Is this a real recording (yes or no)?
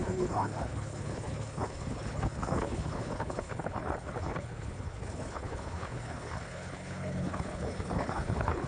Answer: no